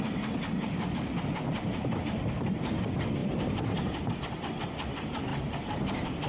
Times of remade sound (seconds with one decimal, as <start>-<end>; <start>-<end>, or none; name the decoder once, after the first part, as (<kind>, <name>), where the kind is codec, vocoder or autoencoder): 3.2-4.1 (vocoder, BigVGAN v2); 5.3-6.3